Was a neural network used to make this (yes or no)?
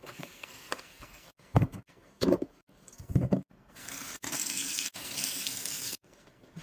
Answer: yes